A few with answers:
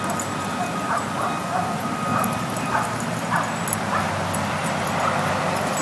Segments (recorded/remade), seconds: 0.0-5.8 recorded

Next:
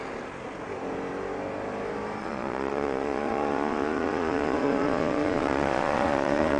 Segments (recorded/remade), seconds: 0.0-2.2 recorded; 2.2-6.6 remade